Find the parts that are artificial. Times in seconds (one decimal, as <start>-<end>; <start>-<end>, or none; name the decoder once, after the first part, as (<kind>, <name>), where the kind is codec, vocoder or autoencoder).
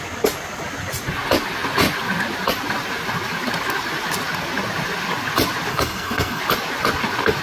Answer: 5.7-6.4 (codec, SNAC)